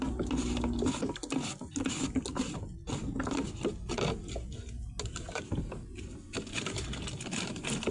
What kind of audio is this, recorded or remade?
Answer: recorded